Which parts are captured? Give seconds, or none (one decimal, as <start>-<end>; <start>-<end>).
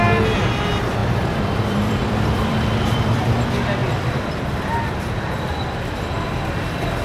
0.0-1.0; 3.4-3.8; 6.5-7.0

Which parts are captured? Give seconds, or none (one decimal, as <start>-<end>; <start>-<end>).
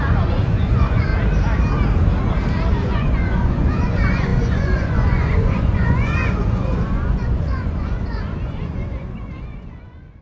1.1-2.7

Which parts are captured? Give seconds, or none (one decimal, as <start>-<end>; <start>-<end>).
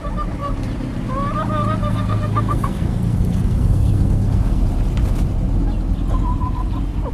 0.0-1.8; 4.6-7.1